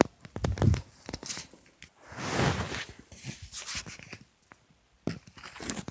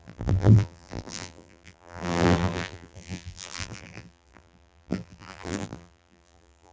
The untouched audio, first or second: first